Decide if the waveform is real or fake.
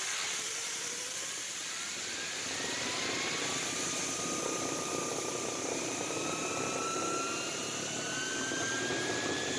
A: fake